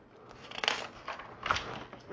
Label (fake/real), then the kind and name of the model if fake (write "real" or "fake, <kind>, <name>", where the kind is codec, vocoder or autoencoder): real